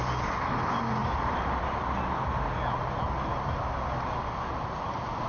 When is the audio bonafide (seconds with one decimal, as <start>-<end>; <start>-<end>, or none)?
0.0-1.0; 1.6-5.3